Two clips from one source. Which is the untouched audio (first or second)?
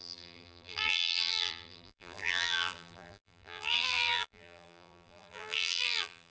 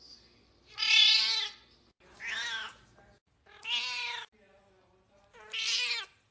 second